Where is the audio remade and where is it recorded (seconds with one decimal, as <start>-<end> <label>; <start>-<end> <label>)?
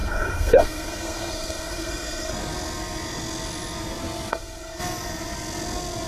0.0-2.3 remade; 2.3-4.3 recorded; 4.3-4.8 remade; 4.8-6.1 recorded